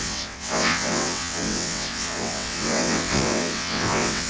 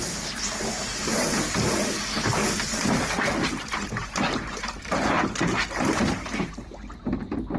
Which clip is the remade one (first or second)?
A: first